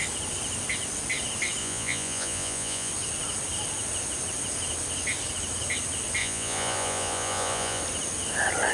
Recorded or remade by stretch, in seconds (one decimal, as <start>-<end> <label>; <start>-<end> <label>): 0.0-1.6 recorded; 1.6-2.9 remade; 2.9-6.2 recorded; 6.2-7.8 remade; 7.8-8.7 recorded